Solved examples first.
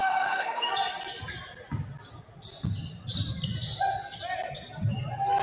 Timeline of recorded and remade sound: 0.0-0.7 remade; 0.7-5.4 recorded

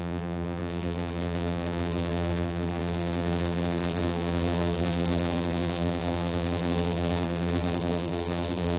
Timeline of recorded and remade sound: 0.0-8.8 remade

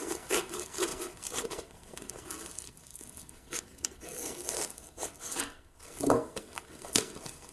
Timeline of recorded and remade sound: 0.0-7.5 remade

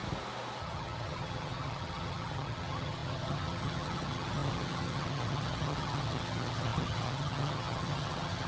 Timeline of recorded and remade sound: 0.0-0.6 recorded; 0.6-8.5 remade

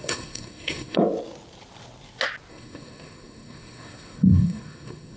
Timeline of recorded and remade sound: 0.0-1.0 remade; 1.0-2.5 recorded; 2.5-5.2 remade

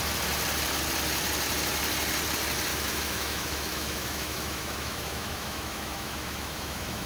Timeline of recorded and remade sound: 0.0-2.7 recorded; 2.7-7.1 remade

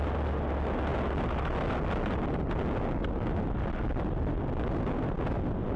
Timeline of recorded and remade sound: 0.0-5.8 recorded

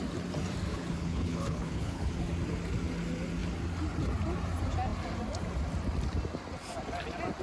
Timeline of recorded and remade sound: 0.0-0.7 recorded; 0.7-2.1 remade; 2.1-7.4 recorded